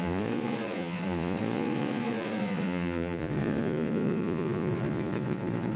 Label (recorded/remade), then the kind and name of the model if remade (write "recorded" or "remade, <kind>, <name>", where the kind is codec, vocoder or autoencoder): remade, vocoder, Vocos